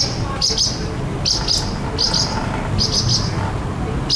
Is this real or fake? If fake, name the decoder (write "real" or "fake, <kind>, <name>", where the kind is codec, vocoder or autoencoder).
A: real